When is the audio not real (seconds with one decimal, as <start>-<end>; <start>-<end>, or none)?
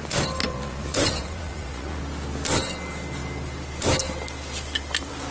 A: 0.4-2.0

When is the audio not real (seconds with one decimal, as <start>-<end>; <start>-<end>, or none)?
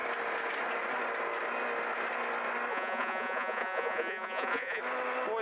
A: 2.7-4.8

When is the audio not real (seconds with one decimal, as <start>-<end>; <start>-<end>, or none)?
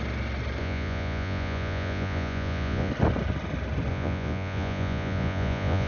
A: 0.6-2.9; 3.9-5.9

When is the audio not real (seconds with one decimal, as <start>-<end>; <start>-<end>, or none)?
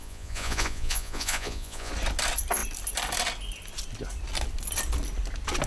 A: 0.0-1.9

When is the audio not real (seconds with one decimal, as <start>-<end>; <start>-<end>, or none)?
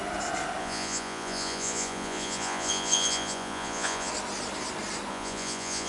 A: 0.6-4.1; 5.1-5.9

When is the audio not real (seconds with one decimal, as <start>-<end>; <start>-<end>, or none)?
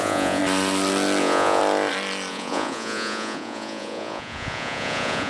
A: 0.0-0.4; 1.2-1.6; 2.3-5.3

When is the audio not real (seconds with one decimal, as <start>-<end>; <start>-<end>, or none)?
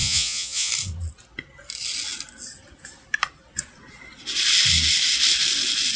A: 0.0-0.7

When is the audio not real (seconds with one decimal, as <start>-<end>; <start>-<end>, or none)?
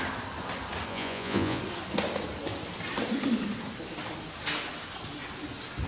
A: 0.9-1.6